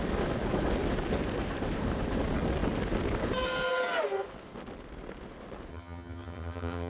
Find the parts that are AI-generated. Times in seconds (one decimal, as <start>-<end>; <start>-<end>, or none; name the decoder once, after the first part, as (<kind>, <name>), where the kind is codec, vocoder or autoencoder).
5.7-6.9 (vocoder, HiFi-GAN)